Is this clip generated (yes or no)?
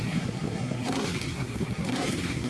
yes